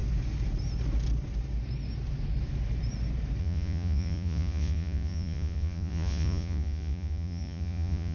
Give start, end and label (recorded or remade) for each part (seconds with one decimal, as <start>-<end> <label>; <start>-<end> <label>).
0.0-3.4 recorded; 3.4-8.1 remade